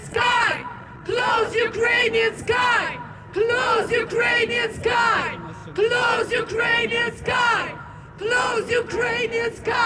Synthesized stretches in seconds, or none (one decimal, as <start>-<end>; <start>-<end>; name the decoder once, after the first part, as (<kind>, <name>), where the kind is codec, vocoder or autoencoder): 0.0-1.2 (vocoder, Vocos)